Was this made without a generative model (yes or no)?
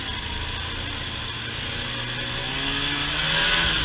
yes